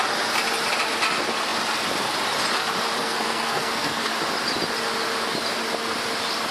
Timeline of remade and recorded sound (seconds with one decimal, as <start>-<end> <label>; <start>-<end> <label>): 0.0-3.0 recorded; 3.0-4.1 remade; 4.1-6.5 recorded